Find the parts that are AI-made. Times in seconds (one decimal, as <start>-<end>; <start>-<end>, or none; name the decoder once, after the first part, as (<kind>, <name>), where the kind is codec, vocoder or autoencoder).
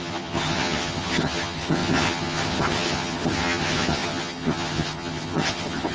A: 0.0-5.9 (vocoder, HiFi-GAN)